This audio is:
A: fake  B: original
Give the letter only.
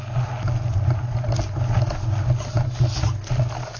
B